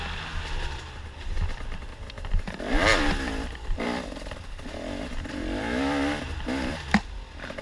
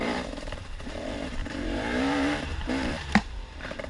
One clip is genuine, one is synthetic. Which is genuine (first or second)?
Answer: first